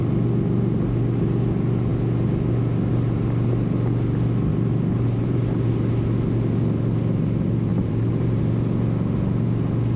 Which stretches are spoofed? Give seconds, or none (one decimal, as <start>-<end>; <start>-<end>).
4.5-5.7; 7.7-8.4